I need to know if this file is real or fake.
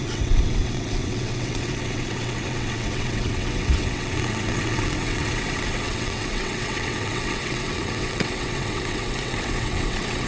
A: fake